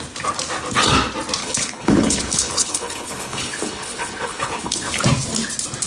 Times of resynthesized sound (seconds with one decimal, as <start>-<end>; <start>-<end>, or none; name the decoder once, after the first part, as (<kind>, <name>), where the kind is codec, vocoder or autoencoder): 1.4-4.9 (codec, HILCodec)